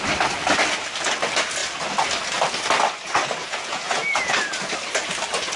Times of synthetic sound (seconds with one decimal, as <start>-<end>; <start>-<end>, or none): 3.4-4.3